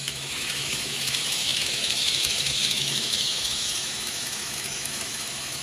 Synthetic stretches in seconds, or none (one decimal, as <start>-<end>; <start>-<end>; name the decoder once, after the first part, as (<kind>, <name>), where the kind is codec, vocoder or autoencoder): 0.0-5.6 (autoencoder, DAC-VAE)